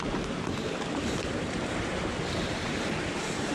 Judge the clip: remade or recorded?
remade